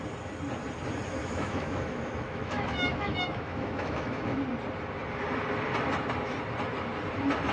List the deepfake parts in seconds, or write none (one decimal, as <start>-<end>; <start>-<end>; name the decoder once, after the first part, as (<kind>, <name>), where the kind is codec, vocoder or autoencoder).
1.2-4.4 (autoencoder, DAC-VAE)

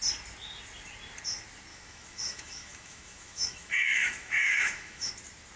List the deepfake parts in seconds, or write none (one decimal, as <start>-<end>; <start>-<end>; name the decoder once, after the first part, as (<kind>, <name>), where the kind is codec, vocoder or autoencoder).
1.7-5.1 (autoencoder, DAC-VAE)

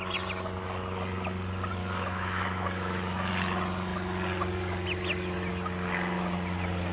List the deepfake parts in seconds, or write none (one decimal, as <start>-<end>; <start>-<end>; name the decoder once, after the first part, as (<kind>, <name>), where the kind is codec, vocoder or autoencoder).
1.8-3.3 (autoencoder, DAC-VAE)

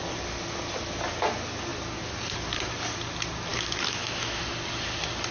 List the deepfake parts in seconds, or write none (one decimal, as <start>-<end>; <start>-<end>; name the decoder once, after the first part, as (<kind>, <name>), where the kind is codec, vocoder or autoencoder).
3.5-4.4 (autoencoder, DAC-VAE)

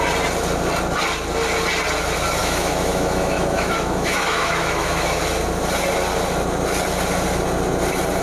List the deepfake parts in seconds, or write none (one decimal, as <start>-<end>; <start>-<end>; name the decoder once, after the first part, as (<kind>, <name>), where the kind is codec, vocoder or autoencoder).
2.4-5.2 (autoencoder, DAC-VAE)

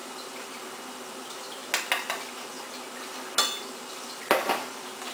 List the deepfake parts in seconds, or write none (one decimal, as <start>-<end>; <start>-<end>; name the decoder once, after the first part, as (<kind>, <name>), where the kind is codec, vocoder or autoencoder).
none